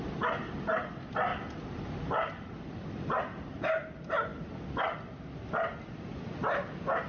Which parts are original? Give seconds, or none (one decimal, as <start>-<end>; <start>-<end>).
0.0-7.1

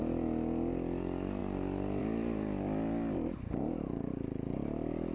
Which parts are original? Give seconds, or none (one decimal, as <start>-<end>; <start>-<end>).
0.0-5.1

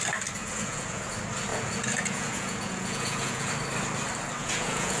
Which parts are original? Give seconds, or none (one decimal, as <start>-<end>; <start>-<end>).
0.0-0.4; 1.1-1.5; 3.5-4.4

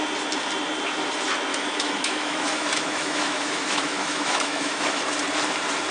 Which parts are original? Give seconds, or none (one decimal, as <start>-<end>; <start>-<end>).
0.0-1.5; 5.0-5.9

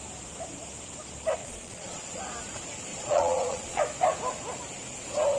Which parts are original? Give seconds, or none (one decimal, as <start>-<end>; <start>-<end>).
0.0-1.4; 2.2-2.9; 3.8-5.4

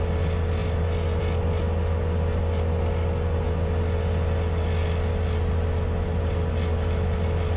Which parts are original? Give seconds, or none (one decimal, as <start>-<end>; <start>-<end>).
0.0-7.6

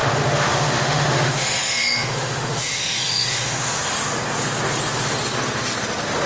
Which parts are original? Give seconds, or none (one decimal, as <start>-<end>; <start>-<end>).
3.8-6.3